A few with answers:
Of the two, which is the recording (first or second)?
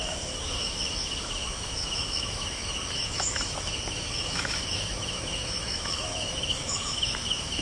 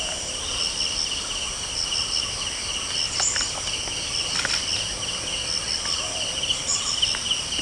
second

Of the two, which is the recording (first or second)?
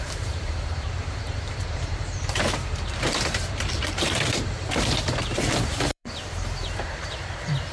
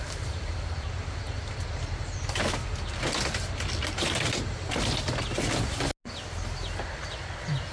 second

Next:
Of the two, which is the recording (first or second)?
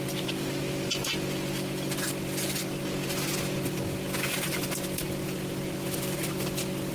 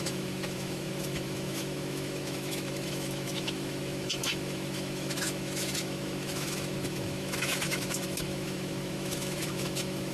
first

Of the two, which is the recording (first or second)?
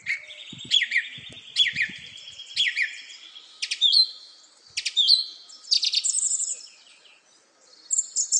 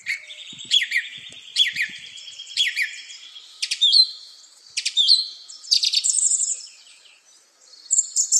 first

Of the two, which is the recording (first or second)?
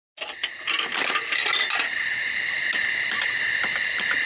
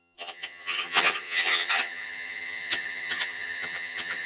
first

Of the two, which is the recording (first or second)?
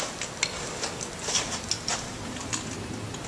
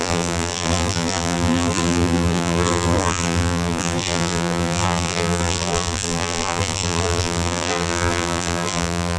first